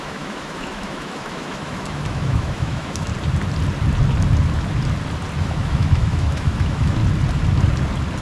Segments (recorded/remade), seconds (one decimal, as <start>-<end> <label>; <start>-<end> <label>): 0.0-3.1 remade; 3.1-5.4 recorded; 5.4-7.0 remade; 7.0-8.2 recorded